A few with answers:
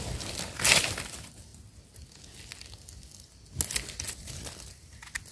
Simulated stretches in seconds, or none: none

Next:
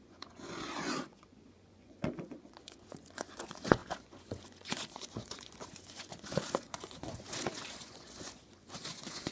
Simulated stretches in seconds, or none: 0.0-9.3 (vocoder, Vocos)

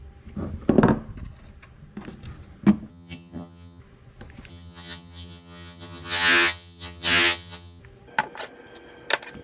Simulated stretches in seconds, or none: 2.9-3.8 (vocoder, HiFi-GAN); 4.5-7.8

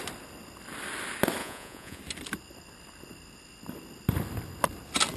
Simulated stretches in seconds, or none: 1.4-2.0 (vocoder, Vocos)

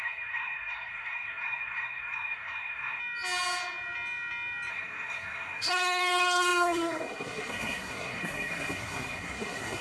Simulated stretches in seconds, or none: 0.0-3.0 (codec, SNAC); 4.7-9.8